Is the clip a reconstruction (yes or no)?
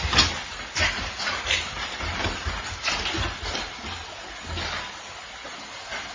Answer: no